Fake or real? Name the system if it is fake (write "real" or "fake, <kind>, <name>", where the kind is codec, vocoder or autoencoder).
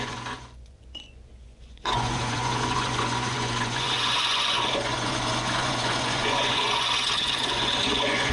fake, vocoder, Vocos